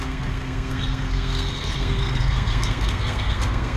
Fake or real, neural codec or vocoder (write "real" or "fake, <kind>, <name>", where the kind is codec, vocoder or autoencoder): fake, codec, SNAC